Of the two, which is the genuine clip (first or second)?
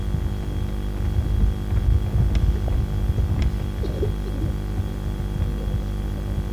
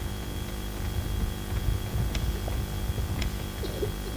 first